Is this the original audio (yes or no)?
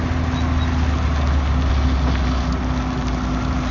yes